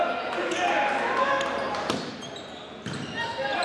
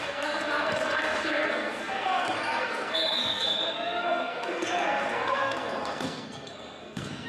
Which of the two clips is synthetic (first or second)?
second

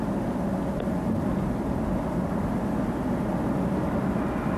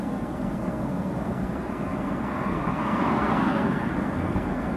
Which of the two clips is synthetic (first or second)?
second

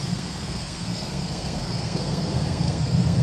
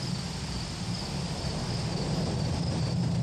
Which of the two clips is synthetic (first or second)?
first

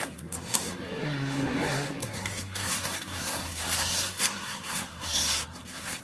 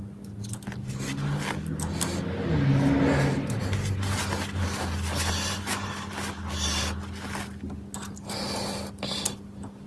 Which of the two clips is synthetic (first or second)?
first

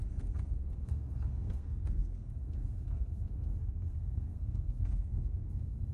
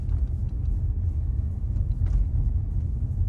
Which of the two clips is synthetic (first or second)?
first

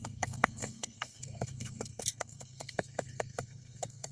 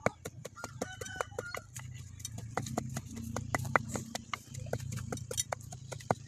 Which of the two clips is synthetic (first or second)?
first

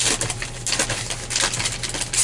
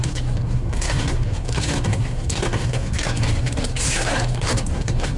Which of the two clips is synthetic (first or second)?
second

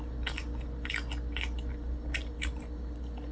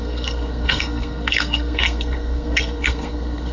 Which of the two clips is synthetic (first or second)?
second